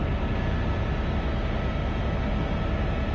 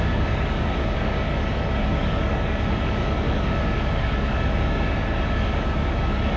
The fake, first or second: second